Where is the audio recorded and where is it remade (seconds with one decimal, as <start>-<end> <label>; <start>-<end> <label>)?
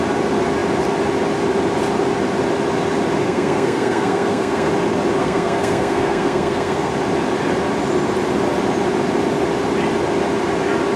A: 0.0-3.2 recorded; 3.2-4.7 remade; 4.7-5.2 recorded; 5.2-6.9 remade; 6.9-11.0 recorded